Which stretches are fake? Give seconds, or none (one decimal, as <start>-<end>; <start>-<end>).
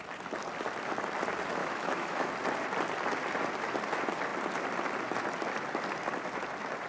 1.6-2.3